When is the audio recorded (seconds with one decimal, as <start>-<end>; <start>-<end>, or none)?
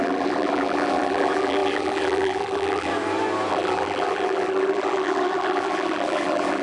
2.9-3.5